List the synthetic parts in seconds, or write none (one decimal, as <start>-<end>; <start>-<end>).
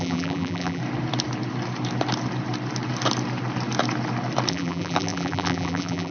0.0-0.8; 4.5-6.1